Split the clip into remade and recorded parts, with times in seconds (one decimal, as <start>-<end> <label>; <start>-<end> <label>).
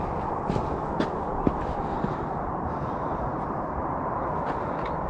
0.0-5.1 recorded